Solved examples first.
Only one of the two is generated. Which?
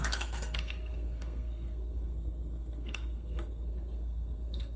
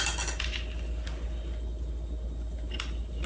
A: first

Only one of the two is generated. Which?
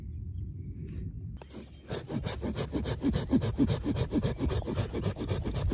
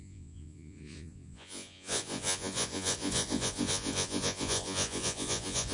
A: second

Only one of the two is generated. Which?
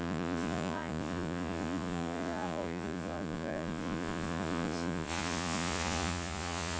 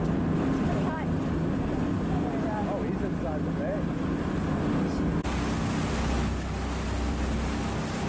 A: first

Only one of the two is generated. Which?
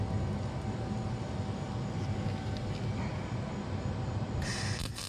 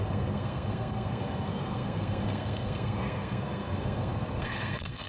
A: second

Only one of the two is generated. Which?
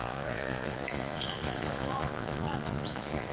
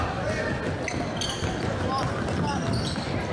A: first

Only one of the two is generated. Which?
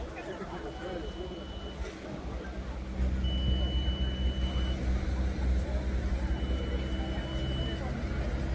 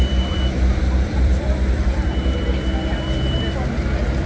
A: second